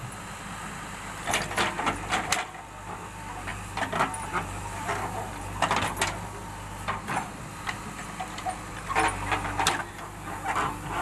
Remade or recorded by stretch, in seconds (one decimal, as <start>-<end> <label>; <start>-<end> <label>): 0.0-3.5 recorded; 3.5-4.9 remade; 4.9-11.0 recorded